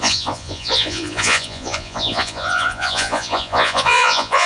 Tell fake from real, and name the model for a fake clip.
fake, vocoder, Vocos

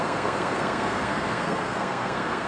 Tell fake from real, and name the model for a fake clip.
fake, codec, SNAC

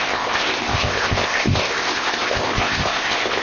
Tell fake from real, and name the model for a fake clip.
fake, codec, ZipCodec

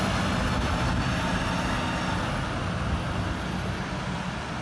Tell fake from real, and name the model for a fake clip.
real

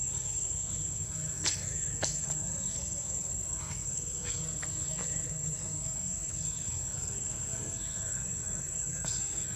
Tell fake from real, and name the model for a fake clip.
fake, codec, SNAC